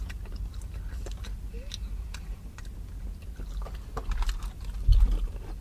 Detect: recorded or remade recorded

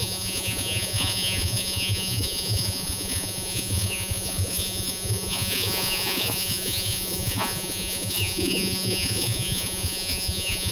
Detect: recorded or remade remade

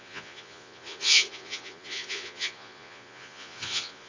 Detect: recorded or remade remade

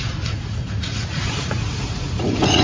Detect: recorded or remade remade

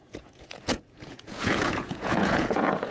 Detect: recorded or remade remade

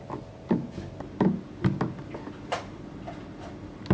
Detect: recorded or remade recorded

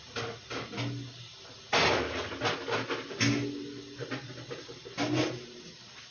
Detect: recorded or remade recorded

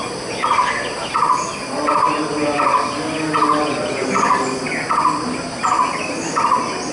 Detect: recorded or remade recorded